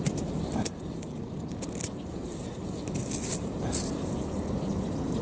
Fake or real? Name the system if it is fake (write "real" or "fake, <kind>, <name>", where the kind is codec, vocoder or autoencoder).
real